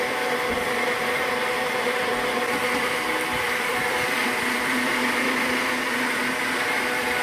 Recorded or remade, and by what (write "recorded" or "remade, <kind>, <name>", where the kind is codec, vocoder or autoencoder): remade, vocoder, BigVGAN v2